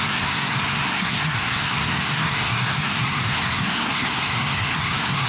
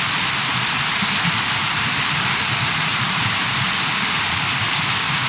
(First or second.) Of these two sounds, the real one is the second